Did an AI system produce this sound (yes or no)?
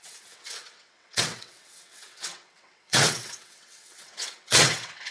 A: yes